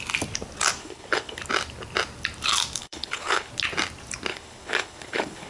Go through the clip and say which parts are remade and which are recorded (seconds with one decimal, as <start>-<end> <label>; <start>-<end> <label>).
0.0-0.8 recorded; 0.8-1.4 remade; 1.4-2.8 recorded; 2.8-3.5 remade; 3.5-4.3 recorded; 4.3-5.5 remade